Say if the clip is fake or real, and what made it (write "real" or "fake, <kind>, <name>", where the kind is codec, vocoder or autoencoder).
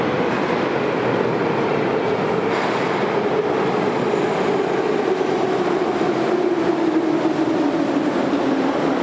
real